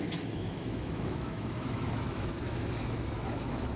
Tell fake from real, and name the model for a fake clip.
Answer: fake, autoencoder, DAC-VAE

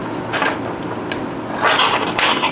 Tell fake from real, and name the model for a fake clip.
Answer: real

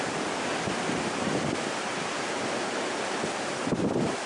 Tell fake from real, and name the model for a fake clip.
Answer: fake, vocoder, BigVGAN v2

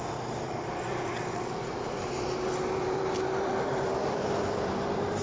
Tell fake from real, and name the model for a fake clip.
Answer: fake, vocoder, BigVGAN v2